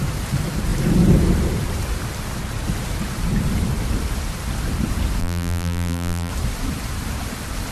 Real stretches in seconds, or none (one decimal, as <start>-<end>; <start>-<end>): 0.0-5.2; 6.3-7.7